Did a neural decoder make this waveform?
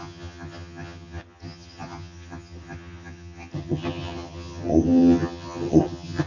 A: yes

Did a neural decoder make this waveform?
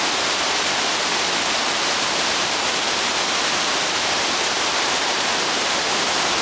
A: no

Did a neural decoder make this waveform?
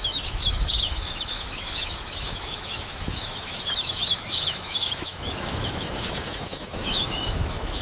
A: yes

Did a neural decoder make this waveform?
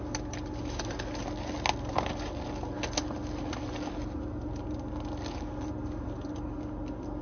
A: no